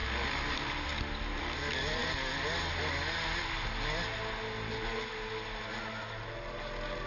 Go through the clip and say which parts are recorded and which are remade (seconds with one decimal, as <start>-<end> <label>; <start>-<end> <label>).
0.0-7.1 recorded